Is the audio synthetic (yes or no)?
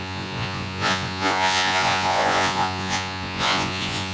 yes